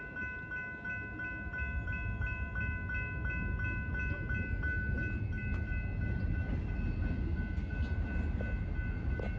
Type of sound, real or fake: real